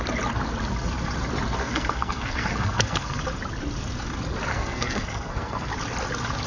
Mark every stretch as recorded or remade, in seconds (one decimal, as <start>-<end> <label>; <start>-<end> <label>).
0.0-1.6 recorded; 1.6-3.2 remade; 3.2-4.5 recorded; 4.5-5.7 remade; 5.7-6.5 recorded